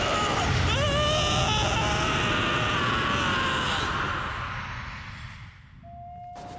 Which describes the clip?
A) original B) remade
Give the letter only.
A